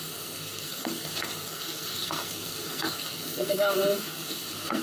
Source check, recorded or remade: remade